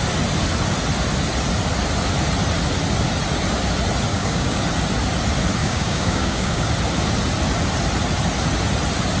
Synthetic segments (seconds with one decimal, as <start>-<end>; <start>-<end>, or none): 4.1-4.6; 5.6-6.7